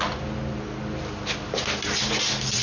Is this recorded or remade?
recorded